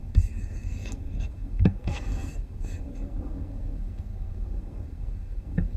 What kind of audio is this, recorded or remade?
remade